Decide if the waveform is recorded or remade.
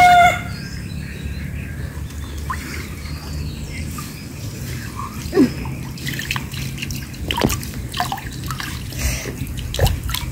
recorded